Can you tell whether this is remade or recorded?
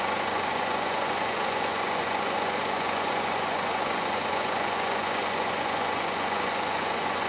remade